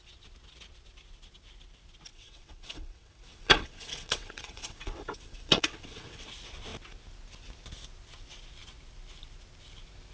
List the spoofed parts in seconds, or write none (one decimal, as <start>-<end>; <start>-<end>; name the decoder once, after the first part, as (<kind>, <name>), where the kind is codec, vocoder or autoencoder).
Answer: 2.1-6.3 (vocoder, WaveNeXt)